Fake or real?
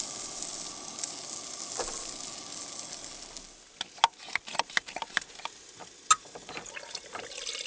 real